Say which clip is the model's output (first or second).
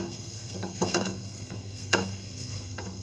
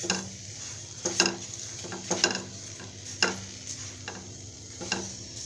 first